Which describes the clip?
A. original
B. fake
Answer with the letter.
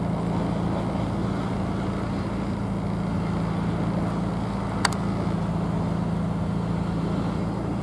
A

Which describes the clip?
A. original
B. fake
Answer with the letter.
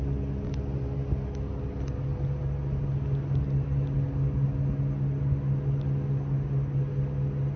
A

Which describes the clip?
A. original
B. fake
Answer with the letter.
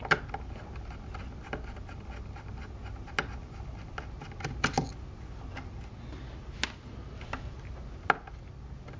A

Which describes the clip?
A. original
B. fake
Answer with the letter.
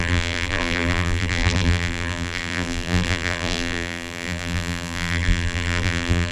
B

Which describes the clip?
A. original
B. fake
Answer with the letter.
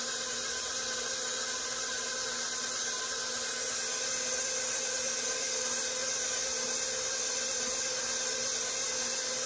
A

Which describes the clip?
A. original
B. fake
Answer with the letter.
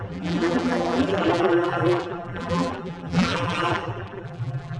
B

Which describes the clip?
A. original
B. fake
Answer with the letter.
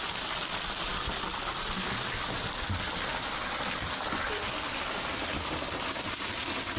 A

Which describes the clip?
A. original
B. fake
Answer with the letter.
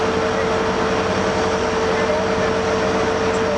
A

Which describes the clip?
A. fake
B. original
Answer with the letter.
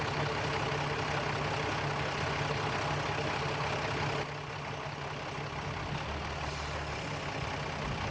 B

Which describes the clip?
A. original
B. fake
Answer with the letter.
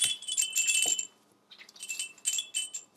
A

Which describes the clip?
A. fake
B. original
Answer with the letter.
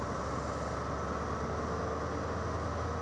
B